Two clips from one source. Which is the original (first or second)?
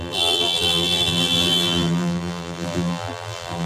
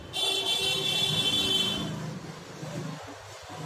second